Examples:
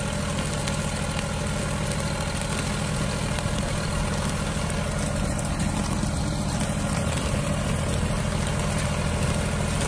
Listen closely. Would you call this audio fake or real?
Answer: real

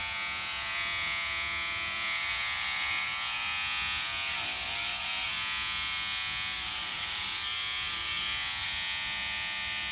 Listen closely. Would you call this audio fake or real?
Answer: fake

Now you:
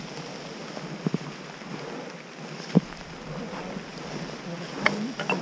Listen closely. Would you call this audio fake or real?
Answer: real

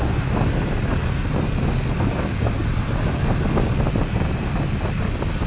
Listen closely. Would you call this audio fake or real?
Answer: real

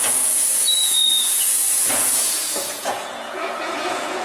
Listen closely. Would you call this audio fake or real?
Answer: fake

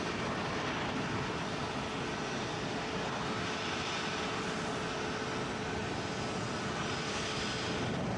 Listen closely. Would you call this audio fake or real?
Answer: real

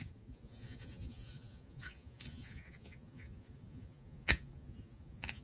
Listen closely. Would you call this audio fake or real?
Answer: fake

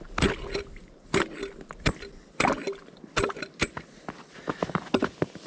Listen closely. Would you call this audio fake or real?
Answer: real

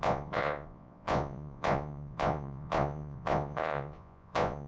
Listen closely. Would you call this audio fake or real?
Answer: fake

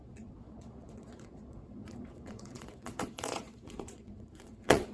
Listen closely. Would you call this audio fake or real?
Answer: fake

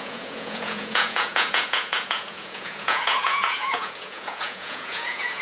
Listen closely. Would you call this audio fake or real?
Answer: fake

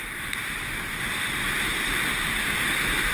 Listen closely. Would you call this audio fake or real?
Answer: real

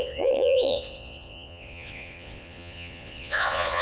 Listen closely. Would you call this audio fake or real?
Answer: fake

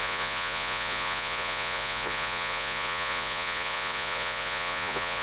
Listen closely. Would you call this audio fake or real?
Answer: fake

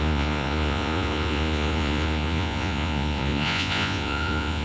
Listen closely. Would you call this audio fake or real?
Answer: fake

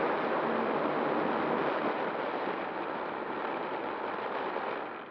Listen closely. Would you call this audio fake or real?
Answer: real